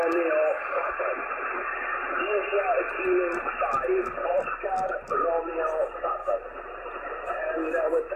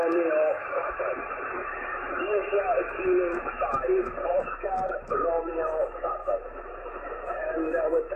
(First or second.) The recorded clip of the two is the first